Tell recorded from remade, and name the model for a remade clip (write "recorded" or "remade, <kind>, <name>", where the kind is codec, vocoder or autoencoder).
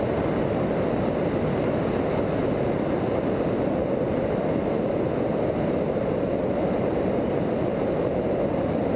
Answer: recorded